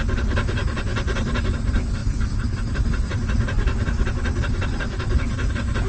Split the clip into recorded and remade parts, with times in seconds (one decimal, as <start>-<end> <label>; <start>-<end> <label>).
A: 0.0-0.9 recorded; 0.9-1.4 remade; 1.4-2.0 recorded; 2.0-5.5 remade; 5.5-5.9 recorded